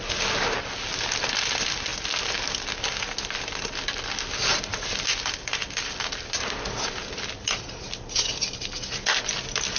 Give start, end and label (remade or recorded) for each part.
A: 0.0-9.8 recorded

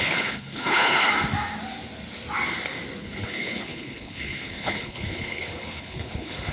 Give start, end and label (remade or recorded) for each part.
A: 0.0-1.1 remade; 1.1-3.0 recorded; 3.0-6.5 remade

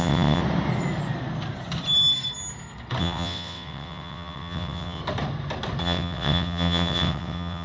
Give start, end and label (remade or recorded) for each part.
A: 0.0-0.4 remade; 0.4-3.0 recorded; 3.0-5.0 remade; 5.0-5.8 recorded; 5.8-7.6 remade

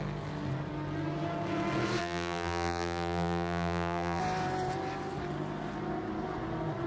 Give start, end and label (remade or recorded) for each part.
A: 0.0-2.0 recorded; 2.0-4.2 remade; 4.2-6.9 recorded

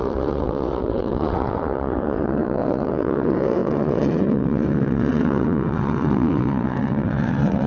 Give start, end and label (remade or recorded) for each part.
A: 0.0-7.7 remade

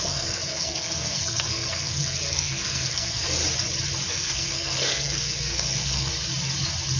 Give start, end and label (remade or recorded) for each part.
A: 0.0-3.4 remade; 3.4-4.1 recorded; 4.1-6.1 remade; 6.1-7.0 recorded

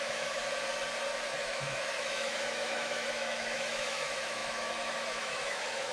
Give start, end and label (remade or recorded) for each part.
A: 0.0-0.4 remade; 0.4-1.4 recorded; 1.4-5.9 remade